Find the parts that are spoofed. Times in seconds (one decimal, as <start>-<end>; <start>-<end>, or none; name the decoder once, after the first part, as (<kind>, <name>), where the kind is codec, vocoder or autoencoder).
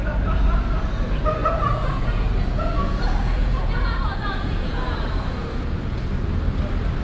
1.4-2.3 (vocoder, Vocos); 2.8-6.1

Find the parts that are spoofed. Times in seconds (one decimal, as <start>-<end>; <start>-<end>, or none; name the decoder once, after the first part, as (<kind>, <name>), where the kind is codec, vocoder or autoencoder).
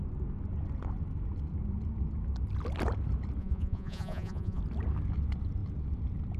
3.4-4.6 (vocoder, Vocos)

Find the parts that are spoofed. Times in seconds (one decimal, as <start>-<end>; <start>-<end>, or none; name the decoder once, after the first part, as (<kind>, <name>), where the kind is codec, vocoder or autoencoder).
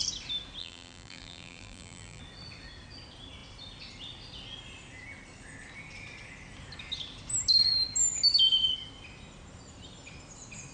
0.6-2.2 (vocoder, BigVGAN v2)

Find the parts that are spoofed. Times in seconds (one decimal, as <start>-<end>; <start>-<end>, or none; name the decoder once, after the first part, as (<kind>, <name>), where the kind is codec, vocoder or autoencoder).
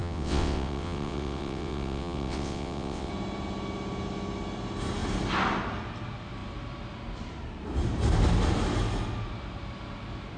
0.0-3.1 (vocoder, WaveNeXt)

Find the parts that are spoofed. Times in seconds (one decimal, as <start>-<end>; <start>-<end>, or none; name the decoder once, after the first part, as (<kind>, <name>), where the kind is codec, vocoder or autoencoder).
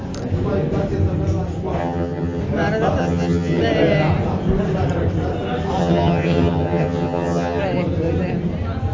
1.8-2.4 (vocoder, HiFi-GAN); 3.0-3.6; 5.8-7.6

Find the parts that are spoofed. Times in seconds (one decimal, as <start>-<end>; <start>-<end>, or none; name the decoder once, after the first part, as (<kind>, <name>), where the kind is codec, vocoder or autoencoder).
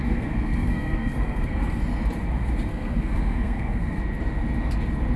0.0-1.8 (codec, SNAC); 2.7-4.0